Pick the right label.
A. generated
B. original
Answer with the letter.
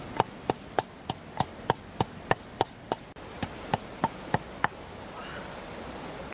B